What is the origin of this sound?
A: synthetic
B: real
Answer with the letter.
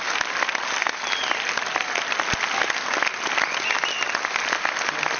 B